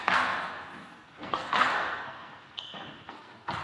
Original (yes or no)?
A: no